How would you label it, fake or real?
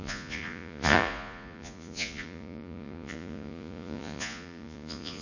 fake